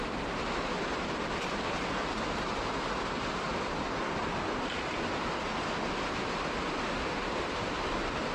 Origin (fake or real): real